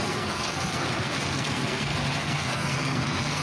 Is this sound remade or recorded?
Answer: remade